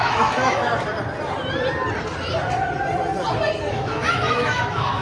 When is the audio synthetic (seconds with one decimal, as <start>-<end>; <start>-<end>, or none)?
0.0-0.7; 3.7-5.0